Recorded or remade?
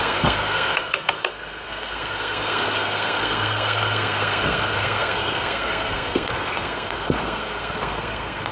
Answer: remade